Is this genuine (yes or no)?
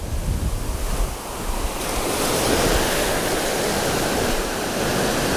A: yes